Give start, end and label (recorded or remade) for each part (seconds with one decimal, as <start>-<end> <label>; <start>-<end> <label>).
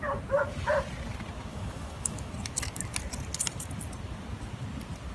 0.0-1.5 recorded; 1.5-2.3 remade; 2.3-5.1 recorded